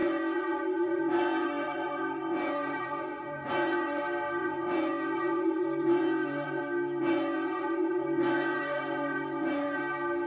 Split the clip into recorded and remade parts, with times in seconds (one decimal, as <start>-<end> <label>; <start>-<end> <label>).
0.0-4.0 remade; 4.0-4.4 recorded; 4.4-6.6 remade; 6.6-7.0 recorded; 7.0-9.8 remade; 9.8-10.3 recorded